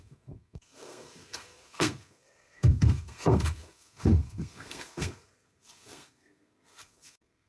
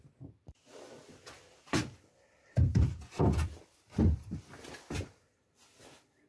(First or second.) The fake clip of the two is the first